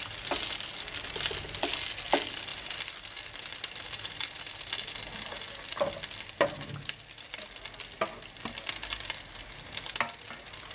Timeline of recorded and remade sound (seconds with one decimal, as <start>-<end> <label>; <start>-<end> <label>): 0.0-10.7 recorded